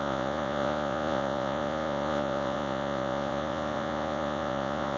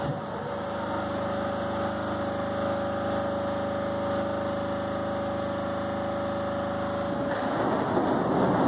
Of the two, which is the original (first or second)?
second